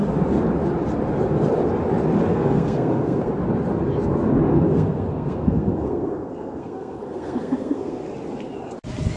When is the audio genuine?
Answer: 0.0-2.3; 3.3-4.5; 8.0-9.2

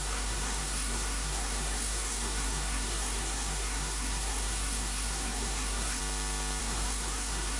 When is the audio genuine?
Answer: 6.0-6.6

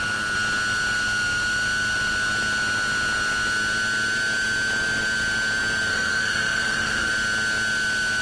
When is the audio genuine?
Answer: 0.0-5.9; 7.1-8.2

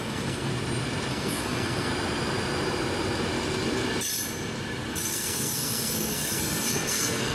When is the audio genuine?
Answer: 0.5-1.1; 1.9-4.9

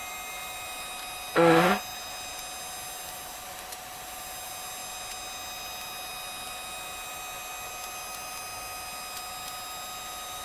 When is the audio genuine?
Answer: 0.0-10.4

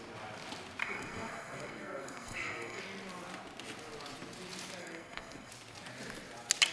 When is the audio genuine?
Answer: 0.0-0.8; 2.8-4.8; 5.5-6.7

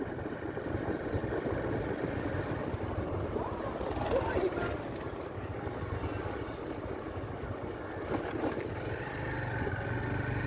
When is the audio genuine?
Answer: 0.0-10.5

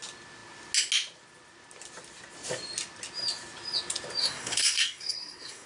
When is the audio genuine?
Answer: 0.0-4.2